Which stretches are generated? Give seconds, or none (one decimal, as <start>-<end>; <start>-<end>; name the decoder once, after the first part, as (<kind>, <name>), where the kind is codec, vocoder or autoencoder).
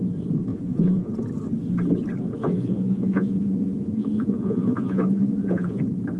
0.5-1.1 (vocoder, Vocos); 2.4-5.8